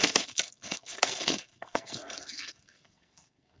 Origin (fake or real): fake